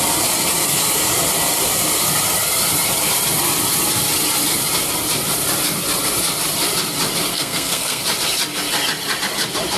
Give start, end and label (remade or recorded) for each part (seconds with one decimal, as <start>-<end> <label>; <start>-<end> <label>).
0.0-7.3 recorded; 7.3-8.0 remade; 8.0-9.8 recorded